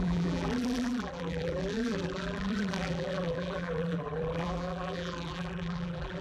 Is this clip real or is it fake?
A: fake